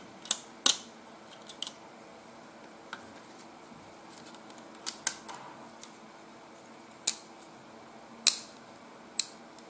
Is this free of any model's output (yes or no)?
yes